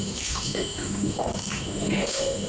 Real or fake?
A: fake